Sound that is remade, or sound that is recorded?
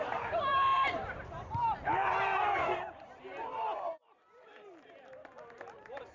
remade